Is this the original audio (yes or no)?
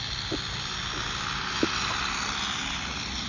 yes